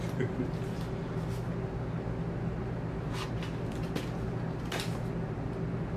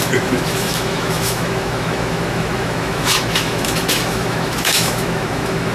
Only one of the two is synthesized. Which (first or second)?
second